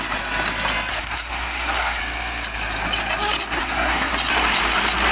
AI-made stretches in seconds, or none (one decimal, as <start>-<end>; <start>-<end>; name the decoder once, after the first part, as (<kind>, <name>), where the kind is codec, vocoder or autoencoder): 0.9-2.0 (codec, SNAC); 3.6-4.1